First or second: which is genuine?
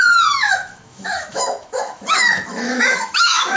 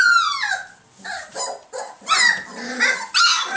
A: second